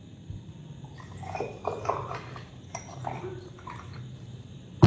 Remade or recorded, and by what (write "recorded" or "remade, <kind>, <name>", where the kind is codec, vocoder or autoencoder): recorded